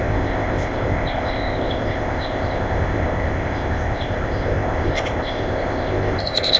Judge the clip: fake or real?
fake